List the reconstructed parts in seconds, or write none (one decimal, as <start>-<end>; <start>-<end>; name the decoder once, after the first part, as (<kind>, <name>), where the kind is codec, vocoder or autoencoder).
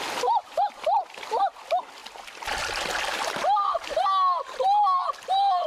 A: none